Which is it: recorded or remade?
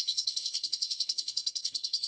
remade